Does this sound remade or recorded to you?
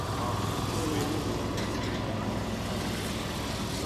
recorded